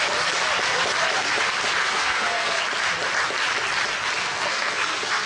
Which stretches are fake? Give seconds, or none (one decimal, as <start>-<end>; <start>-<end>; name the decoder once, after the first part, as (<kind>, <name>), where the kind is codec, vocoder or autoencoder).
1.8-2.6 (codec, SNAC); 4.2-5.3